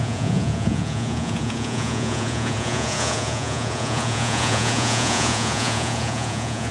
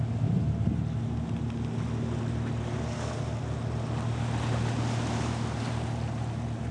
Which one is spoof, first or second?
first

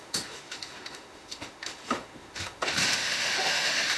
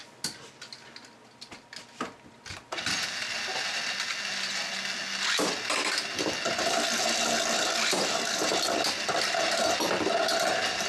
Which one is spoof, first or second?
first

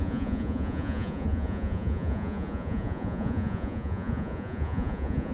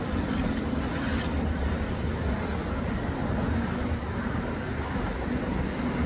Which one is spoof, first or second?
first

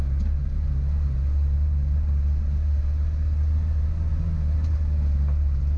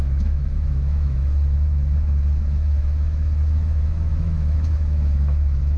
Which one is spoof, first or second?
second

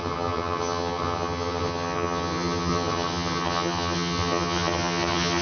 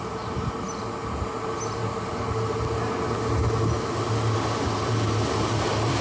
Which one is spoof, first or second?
first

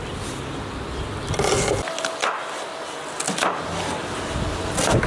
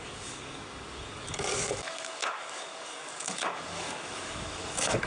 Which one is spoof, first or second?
second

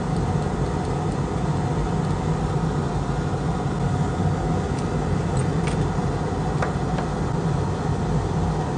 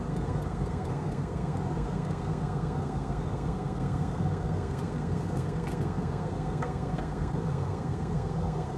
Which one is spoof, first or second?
second